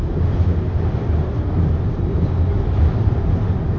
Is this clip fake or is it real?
real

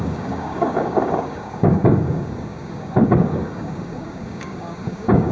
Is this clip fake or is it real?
fake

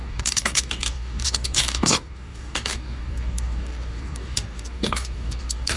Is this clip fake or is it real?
fake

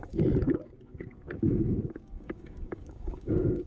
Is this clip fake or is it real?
fake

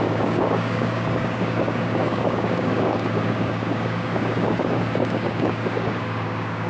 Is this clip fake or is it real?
fake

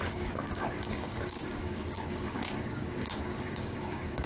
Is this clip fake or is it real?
fake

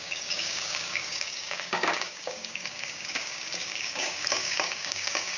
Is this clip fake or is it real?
fake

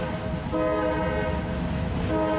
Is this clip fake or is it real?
real